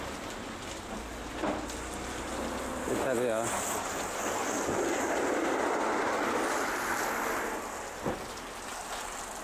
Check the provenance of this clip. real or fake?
real